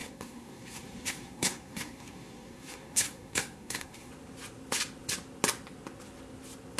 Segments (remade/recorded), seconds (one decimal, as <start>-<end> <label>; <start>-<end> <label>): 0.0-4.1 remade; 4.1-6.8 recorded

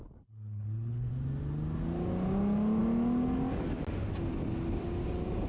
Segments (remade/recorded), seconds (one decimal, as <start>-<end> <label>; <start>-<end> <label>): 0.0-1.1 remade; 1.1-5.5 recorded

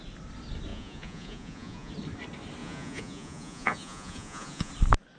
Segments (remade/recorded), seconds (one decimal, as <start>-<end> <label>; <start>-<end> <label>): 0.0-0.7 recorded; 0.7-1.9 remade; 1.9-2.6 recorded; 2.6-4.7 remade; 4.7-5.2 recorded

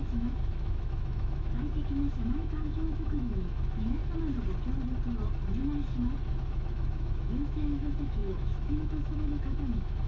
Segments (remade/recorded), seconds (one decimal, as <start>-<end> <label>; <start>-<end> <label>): 0.0-4.0 remade; 4.0-6.3 recorded; 6.3-10.1 remade

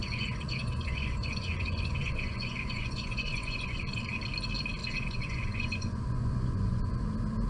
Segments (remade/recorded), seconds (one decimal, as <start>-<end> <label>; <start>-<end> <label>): 0.0-4.0 remade; 4.0-4.8 recorded; 4.8-7.0 remade; 7.0-7.5 recorded

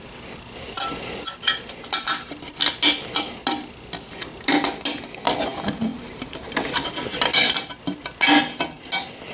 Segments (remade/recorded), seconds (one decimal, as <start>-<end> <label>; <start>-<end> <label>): 0.0-9.3 recorded